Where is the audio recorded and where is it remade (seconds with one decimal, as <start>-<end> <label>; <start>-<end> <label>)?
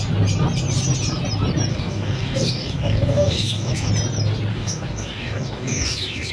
0.0-1.7 recorded; 1.7-3.9 remade; 3.9-4.5 recorded; 4.5-6.3 remade